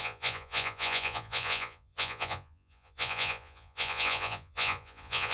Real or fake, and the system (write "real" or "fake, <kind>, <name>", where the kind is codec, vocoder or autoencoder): fake, vocoder, Vocos